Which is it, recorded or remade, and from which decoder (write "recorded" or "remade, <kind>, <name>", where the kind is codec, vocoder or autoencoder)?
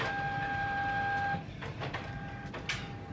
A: recorded